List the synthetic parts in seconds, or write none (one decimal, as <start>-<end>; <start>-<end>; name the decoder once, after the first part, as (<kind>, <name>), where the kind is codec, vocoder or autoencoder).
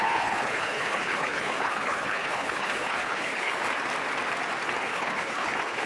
0.0-3.6 (codec, HILCodec); 4.8-5.9